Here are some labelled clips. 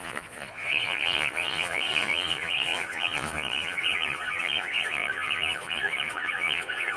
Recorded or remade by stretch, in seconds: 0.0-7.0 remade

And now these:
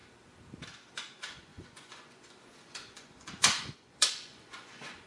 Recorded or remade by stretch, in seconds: 0.0-0.9 recorded; 0.9-5.1 remade

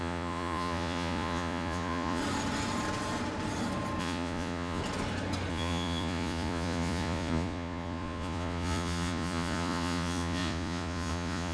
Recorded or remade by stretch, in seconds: 0.0-2.2 remade; 2.2-4.0 recorded; 4.0-4.8 remade; 4.8-5.5 recorded; 5.5-11.5 remade

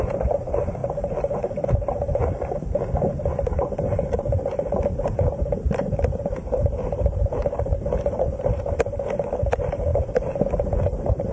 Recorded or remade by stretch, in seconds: 0.0-11.3 recorded

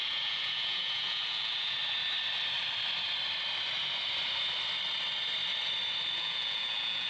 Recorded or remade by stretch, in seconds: 0.0-1.8 remade; 1.8-6.1 recorded; 6.1-7.1 remade